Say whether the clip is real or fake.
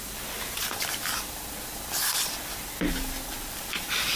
real